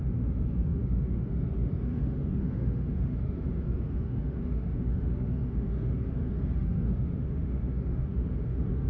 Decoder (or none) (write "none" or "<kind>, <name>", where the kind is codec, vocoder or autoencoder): autoencoder, DAC-VAE